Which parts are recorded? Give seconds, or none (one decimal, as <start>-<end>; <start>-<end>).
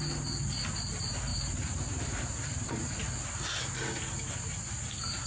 0.0-1.3; 2.9-5.3